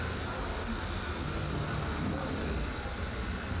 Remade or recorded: recorded